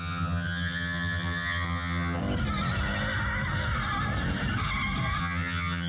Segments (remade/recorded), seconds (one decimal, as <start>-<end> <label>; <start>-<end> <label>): 0.0-2.2 remade; 2.2-5.2 recorded; 5.2-5.9 remade